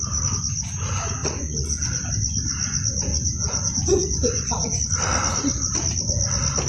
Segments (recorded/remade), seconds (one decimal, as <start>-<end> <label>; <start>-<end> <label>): 0.0-1.2 recorded; 1.2-2.1 remade; 2.1-3.1 recorded; 3.1-4.8 remade; 4.8-6.7 recorded